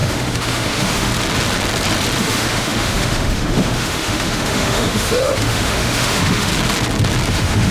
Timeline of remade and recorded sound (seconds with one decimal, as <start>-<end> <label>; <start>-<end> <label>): 0.0-1.1 remade; 1.1-2.2 recorded; 2.2-6.5 remade; 6.5-7.3 recorded; 7.3-7.7 remade